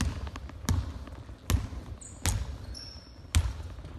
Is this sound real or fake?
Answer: real